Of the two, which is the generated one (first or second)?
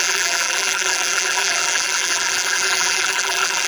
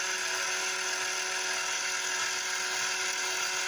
first